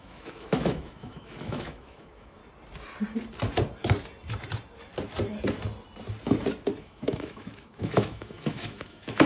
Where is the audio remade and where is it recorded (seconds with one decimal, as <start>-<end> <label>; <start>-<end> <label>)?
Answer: 0.0-2.4 remade; 2.4-6.8 recorded; 6.8-9.3 remade